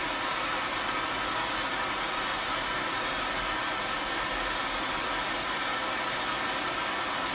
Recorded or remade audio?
recorded